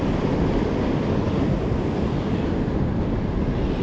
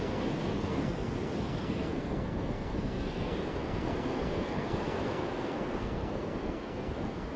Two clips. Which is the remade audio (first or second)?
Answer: second